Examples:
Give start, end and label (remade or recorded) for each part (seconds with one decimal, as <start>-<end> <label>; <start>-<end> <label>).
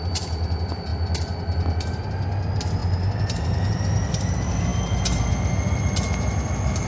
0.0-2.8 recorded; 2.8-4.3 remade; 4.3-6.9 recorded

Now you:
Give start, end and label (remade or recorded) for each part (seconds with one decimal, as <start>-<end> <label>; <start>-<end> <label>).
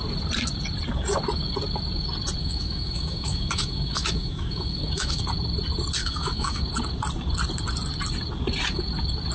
0.0-2.4 recorded; 2.4-5.2 remade; 5.2-6.0 recorded; 6.0-6.6 remade; 6.6-9.3 recorded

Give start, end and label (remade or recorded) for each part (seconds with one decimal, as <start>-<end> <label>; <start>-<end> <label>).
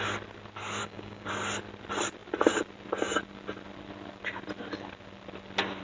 0.0-0.8 recorded; 0.8-1.3 remade; 1.3-5.8 recorded